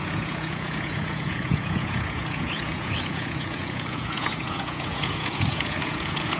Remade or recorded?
remade